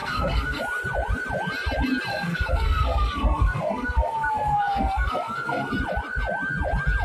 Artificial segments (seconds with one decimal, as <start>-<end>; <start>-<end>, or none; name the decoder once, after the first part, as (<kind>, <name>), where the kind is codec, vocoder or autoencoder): 0.0-0.6 (codec, SNAC); 2.1-5.7